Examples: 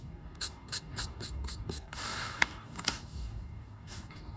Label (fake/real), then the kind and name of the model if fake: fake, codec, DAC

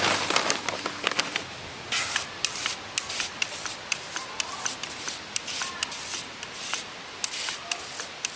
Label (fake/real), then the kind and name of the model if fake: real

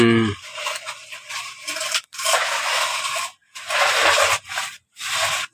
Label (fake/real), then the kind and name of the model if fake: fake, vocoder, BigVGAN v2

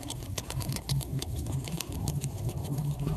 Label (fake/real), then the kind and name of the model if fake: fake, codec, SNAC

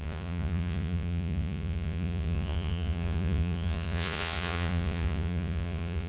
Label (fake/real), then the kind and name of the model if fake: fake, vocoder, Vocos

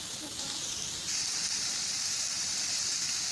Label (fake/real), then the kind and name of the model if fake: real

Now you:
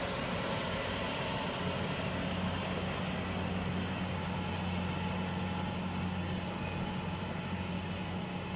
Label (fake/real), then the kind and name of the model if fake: real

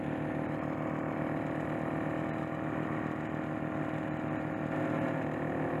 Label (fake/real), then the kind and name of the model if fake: real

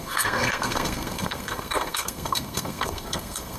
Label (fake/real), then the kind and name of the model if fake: fake, codec, SNAC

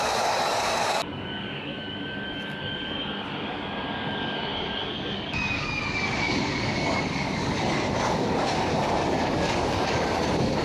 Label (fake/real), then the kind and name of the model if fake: fake, codec, DAC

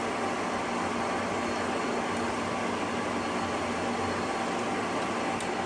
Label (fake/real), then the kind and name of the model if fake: real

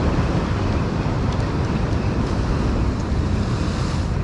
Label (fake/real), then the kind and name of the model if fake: real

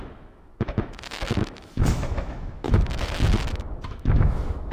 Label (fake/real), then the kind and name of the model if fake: fake, autoencoder, DAC-VAE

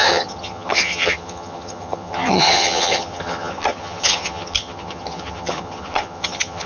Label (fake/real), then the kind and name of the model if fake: fake, vocoder, HiFi-GAN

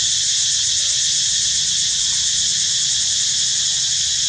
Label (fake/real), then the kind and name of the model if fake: real